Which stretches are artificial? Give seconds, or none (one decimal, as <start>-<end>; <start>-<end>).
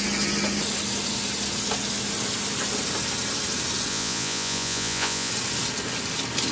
3.9-5.3